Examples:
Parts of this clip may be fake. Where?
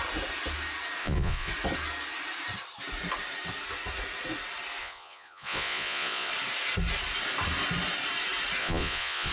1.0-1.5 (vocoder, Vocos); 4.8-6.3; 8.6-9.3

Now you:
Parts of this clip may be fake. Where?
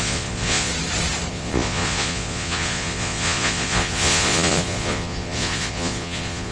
0.0-0.7 (vocoder, Vocos); 1.3-6.5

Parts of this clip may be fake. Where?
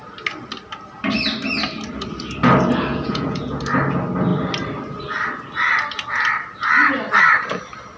2.9-3.6 (vocoder, Vocos)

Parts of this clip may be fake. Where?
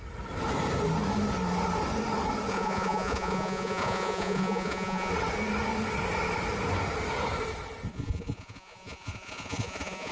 2.5-5.1 (vocoder, Vocos); 7.9-10.1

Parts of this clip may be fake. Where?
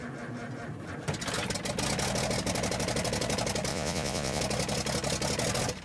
3.7-4.4 (vocoder, Vocos)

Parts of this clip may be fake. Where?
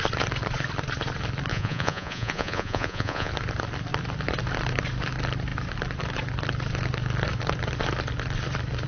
1.5-3.3 (vocoder, Vocos)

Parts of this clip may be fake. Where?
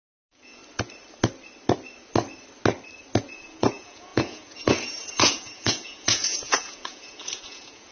0.0-0.6 (vocoder, Vocos); 3.2-7.9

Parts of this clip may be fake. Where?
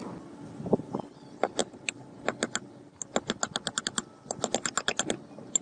none